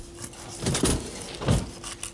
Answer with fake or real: real